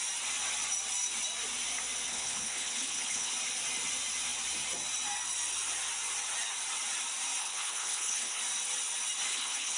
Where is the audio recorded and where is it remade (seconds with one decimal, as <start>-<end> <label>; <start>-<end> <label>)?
0.0-2.1 recorded; 2.1-3.3 remade; 3.3-7.4 recorded; 7.4-8.4 remade; 8.4-9.3 recorded; 9.3-9.8 remade